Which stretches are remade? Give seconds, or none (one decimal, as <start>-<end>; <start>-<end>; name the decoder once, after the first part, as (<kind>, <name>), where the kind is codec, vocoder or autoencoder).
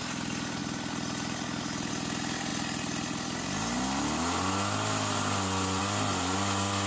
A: none